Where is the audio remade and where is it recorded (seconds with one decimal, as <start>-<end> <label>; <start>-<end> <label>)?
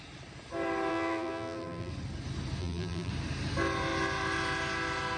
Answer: 0.0-0.9 recorded; 0.9-1.9 remade; 1.9-2.6 recorded; 2.6-3.1 remade; 3.1-5.2 recorded